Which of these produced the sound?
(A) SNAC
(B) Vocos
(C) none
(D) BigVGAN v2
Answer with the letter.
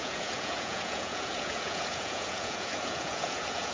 B